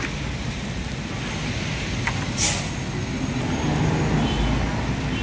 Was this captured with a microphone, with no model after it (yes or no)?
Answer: yes